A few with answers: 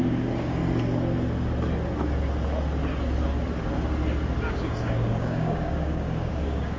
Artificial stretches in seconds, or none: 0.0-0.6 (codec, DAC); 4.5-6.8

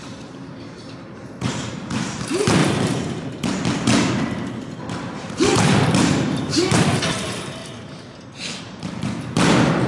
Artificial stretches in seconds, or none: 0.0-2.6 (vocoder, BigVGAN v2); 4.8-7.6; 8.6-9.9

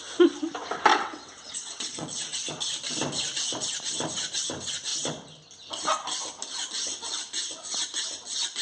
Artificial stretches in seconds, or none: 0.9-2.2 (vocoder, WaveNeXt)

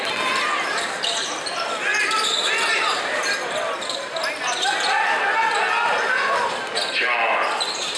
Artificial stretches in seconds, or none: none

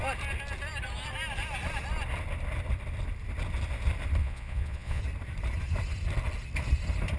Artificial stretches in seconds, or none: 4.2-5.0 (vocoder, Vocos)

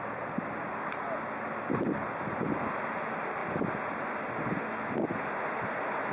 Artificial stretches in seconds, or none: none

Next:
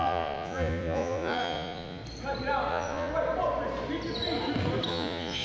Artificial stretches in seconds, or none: 0.0-2.0 (vocoder, Vocos); 2.7-3.1; 4.9-5.4